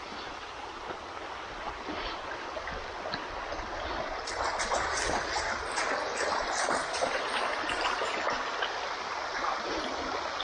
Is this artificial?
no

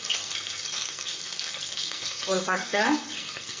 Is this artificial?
yes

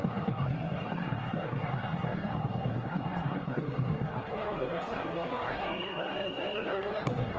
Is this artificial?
yes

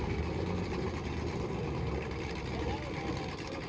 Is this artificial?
no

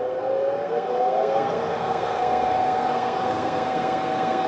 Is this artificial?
yes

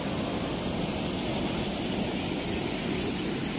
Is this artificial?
no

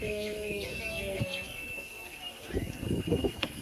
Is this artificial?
yes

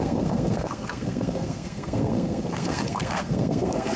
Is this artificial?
yes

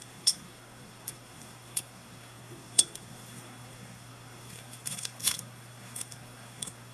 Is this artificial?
yes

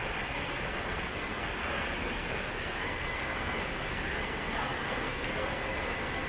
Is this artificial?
yes